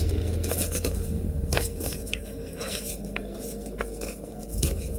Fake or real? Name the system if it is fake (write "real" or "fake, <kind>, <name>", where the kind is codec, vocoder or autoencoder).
fake, codec, SNAC